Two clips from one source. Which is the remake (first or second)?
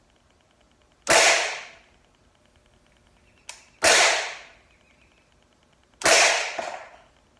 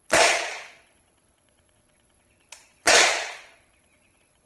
second